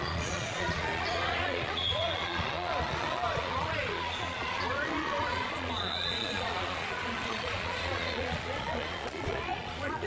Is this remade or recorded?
remade